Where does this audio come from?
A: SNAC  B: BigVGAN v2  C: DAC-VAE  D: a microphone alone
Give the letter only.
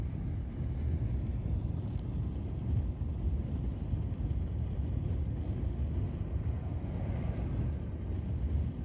D